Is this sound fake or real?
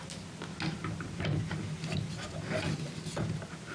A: real